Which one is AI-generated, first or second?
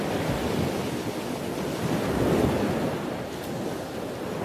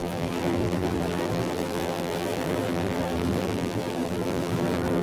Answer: second